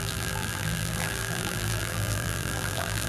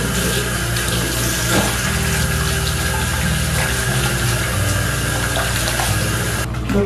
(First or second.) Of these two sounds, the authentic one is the second